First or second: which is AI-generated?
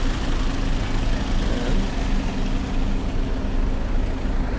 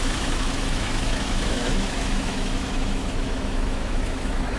second